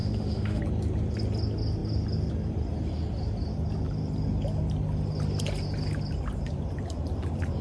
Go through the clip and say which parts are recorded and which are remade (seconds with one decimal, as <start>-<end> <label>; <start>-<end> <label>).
0.0-0.6 remade; 0.6-7.6 recorded